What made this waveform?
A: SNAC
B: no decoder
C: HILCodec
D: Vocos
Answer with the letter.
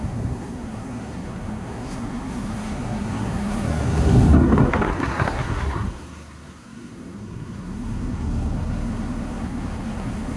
A